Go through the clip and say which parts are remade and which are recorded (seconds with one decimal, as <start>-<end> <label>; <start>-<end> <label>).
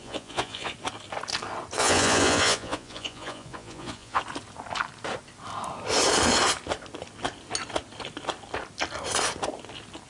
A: 0.0-0.7 remade; 0.7-1.8 recorded; 1.8-4.2 remade; 4.2-10.1 recorded